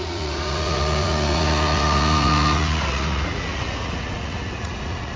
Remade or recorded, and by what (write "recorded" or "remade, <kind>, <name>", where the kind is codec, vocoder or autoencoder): remade, vocoder, Vocos